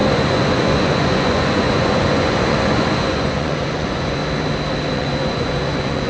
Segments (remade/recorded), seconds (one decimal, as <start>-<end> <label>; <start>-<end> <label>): 0.0-4.2 remade; 4.2-4.9 recorded; 4.9-6.1 remade